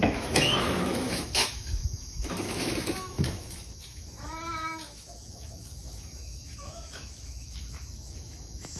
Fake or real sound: fake